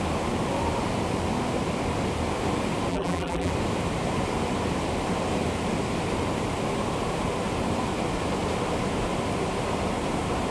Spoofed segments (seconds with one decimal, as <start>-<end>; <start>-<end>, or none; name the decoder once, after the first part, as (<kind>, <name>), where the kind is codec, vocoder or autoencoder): 2.9-3.5 (vocoder, BigVGAN v2)